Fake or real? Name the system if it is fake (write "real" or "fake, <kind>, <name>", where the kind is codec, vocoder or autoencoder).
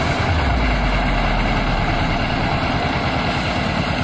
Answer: real